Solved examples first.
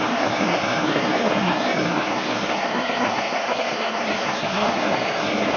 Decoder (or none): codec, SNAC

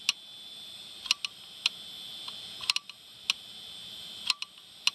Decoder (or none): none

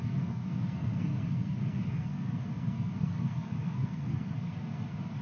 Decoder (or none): codec, SNAC